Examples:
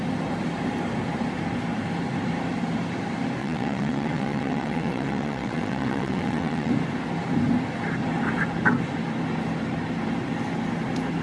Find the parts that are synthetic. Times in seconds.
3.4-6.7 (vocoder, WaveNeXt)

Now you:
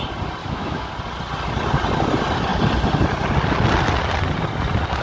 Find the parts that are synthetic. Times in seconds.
0.4-0.9 (autoencoder, DAC-VAE)

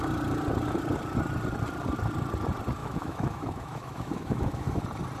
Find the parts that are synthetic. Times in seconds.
2.8-4.8 (autoencoder, DAC-VAE)

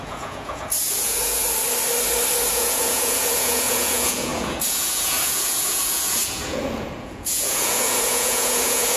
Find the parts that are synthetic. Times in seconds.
0.0-1.4 (vocoder, Vocos); 2.5-9.0

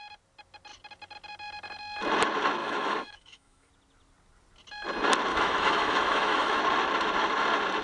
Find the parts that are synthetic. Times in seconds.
2.6-3.7 (autoencoder, DAC-VAE); 5.3-6.6

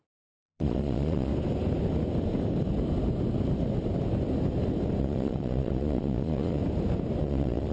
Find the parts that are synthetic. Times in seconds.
0.0-1.3 (vocoder, Vocos); 5.0-6.6; 7.2-7.7